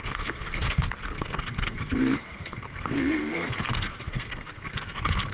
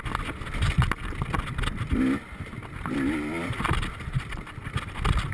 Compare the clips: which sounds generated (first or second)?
first